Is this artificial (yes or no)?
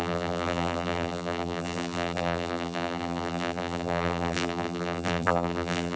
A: yes